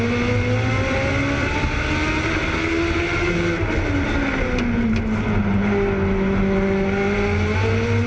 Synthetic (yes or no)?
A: no